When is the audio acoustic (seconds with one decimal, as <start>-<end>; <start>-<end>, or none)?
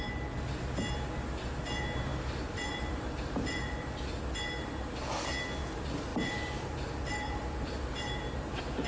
0.0-2.1; 4.1-6.1